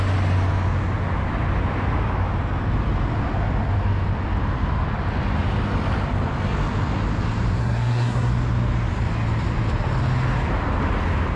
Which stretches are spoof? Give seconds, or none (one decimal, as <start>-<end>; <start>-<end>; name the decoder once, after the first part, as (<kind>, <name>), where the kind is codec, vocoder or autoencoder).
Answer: 7.6-8.3 (codec, SNAC)